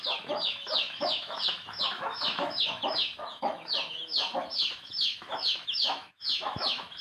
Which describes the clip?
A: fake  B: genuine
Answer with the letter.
A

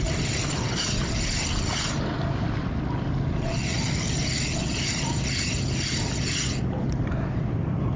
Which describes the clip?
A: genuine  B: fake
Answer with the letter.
A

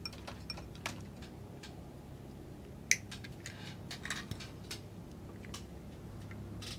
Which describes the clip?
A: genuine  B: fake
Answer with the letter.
A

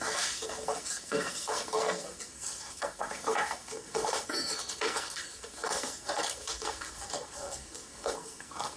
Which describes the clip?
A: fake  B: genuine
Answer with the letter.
A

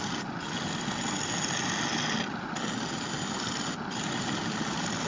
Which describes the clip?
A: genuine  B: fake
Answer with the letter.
A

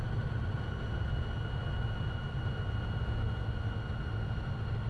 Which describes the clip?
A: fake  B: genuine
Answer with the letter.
B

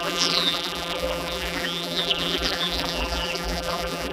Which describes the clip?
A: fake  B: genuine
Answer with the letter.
A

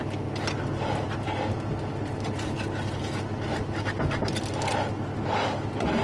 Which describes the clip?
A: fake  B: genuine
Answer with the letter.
B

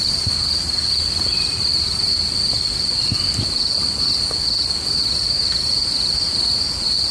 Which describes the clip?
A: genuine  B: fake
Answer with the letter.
A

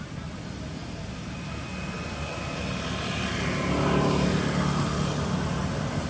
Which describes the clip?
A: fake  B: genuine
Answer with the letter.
B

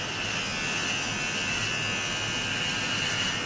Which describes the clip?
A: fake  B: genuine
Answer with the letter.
B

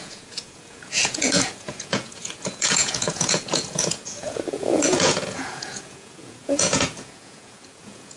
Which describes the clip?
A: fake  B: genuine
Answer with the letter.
A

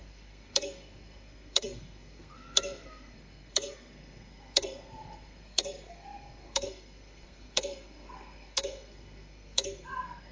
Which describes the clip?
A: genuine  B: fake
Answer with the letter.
B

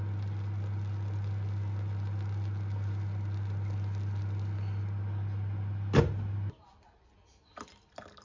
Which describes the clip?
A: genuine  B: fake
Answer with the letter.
A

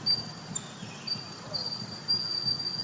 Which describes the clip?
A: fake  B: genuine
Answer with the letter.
B